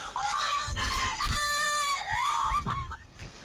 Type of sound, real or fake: fake